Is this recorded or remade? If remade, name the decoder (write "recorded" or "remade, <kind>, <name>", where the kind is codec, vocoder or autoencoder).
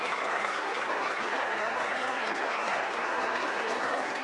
remade, codec, SNAC